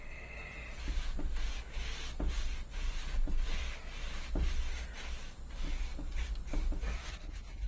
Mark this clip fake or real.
real